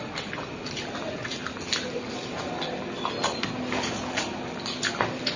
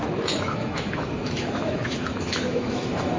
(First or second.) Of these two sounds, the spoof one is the second